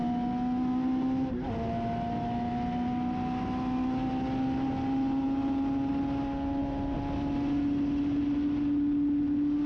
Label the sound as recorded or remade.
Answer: recorded